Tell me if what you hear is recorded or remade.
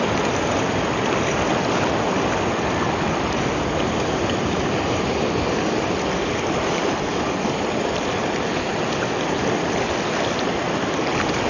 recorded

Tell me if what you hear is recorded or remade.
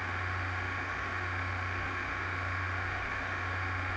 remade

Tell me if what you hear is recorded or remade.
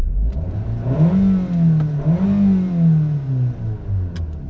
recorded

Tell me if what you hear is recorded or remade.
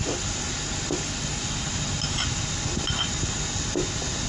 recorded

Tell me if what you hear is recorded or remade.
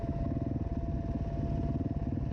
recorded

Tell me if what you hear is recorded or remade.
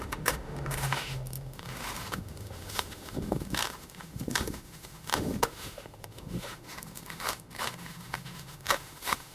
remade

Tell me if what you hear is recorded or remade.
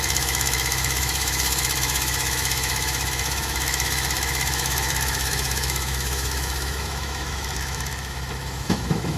remade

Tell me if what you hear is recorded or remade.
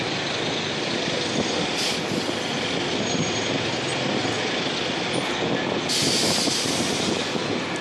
recorded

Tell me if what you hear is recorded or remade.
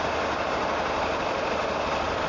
recorded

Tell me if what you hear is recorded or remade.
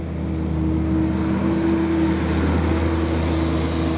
recorded